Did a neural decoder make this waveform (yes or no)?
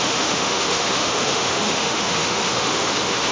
yes